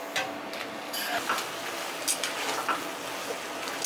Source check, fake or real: real